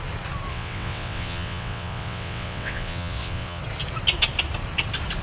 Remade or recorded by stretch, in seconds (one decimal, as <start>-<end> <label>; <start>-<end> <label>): 0.0-0.5 recorded; 0.5-3.6 remade; 3.6-5.2 recorded